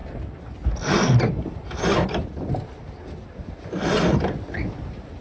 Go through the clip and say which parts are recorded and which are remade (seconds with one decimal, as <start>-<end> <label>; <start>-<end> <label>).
0.0-5.2 recorded